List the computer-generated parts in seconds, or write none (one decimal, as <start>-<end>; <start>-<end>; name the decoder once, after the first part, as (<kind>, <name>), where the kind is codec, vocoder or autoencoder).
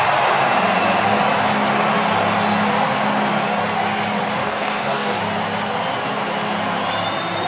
4.4-5.2 (codec, DAC)